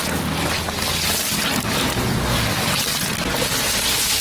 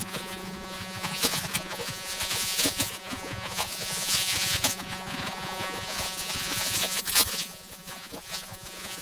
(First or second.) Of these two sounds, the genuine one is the first